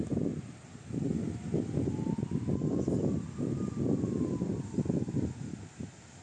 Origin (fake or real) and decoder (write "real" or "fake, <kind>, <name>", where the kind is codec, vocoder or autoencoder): real